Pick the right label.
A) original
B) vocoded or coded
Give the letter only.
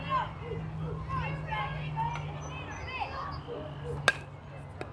A